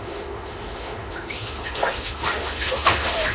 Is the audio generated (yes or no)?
yes